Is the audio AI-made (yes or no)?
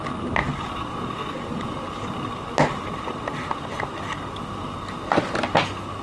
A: no